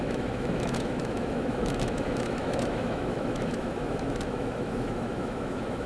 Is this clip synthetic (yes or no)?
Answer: yes